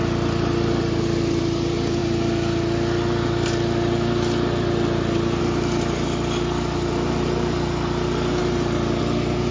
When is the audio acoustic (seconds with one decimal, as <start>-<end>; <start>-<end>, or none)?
0.0-9.5

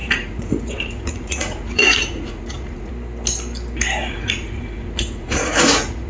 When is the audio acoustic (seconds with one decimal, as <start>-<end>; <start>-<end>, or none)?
2.9-4.0

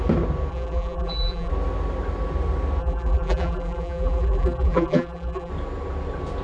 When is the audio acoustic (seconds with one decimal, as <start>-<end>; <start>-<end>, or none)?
0.0-0.5; 1.5-2.8; 5.5-6.4

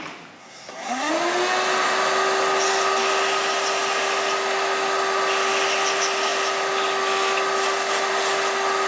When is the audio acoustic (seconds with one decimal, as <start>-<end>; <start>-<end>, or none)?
0.0-0.4; 1.1-8.9

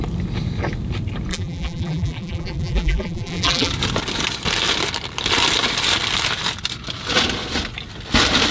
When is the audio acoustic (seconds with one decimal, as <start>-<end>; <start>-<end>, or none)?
0.0-1.3; 3.7-8.5

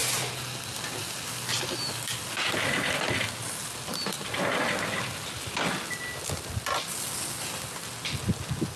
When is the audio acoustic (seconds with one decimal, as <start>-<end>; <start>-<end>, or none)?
0.0-8.8

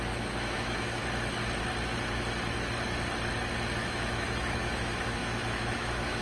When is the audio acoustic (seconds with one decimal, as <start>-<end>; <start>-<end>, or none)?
1.0-3.8